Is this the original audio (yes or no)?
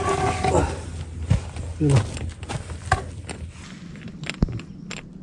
yes